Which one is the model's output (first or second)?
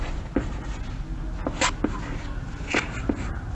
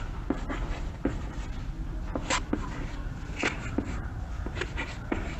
second